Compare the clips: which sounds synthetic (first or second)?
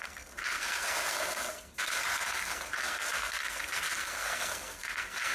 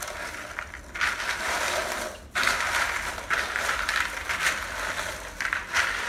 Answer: first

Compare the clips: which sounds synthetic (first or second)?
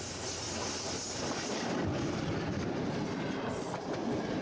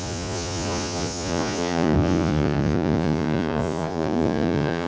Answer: second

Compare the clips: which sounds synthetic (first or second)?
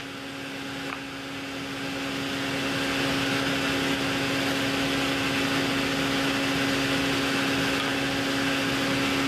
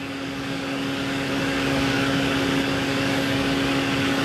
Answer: second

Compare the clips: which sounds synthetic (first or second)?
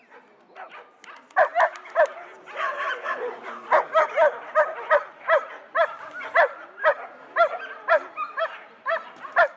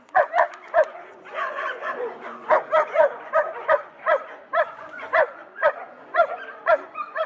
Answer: second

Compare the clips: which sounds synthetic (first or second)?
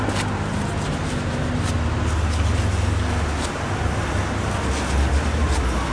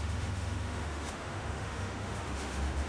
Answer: second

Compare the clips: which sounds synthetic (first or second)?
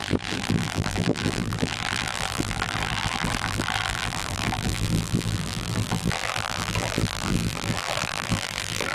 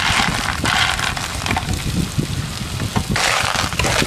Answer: first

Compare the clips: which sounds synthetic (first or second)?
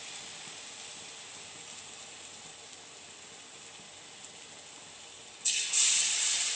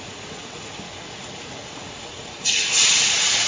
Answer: second